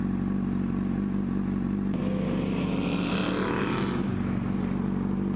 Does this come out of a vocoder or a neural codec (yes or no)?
no